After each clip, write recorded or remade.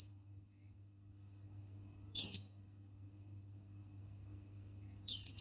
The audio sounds remade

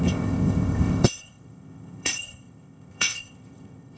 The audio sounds remade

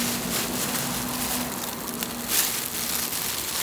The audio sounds recorded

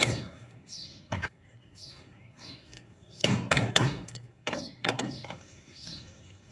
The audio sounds remade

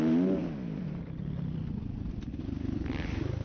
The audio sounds recorded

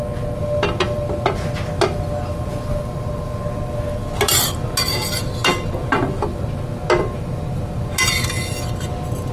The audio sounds recorded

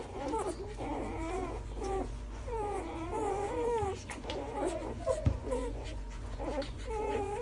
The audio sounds remade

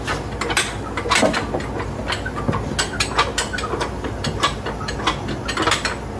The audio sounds recorded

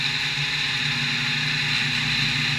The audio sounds recorded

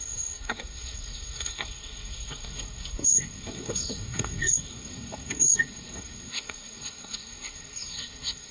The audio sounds remade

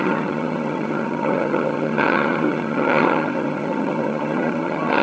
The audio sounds remade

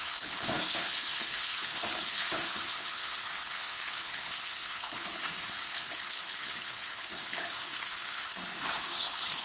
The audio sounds remade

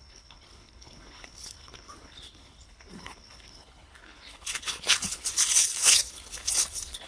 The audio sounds remade